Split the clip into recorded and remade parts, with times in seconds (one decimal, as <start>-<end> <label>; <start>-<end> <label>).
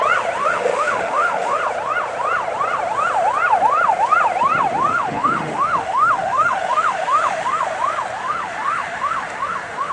0.0-0.4 recorded; 0.4-1.6 remade; 1.6-4.9 recorded; 4.9-7.6 remade; 7.6-8.2 recorded; 8.2-9.9 remade